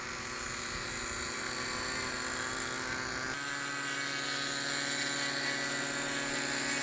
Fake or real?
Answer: real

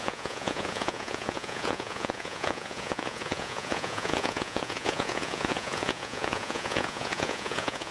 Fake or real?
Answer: fake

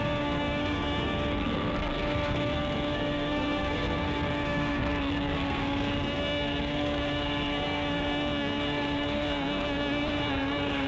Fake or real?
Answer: fake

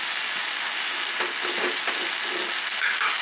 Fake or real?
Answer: real